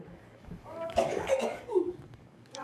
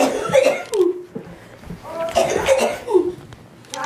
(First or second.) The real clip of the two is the second